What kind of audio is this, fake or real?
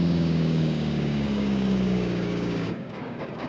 fake